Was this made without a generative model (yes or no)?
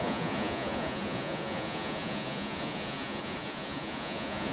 no